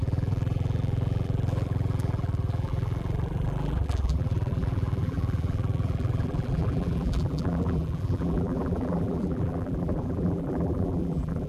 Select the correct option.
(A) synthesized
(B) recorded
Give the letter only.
A